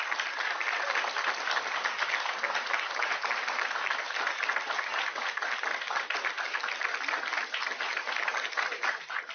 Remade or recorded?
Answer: recorded